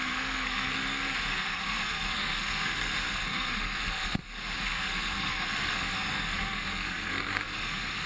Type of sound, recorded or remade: remade